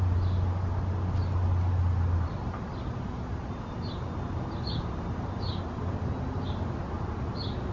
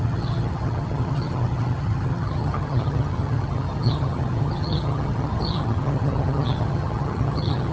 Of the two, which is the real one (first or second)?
first